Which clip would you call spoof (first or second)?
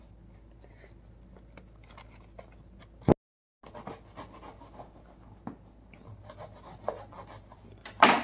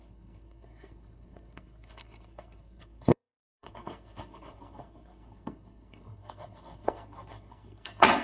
second